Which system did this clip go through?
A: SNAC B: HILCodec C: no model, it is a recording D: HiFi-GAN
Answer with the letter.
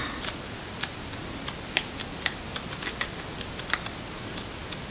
C